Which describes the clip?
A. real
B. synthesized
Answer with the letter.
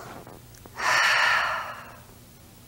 A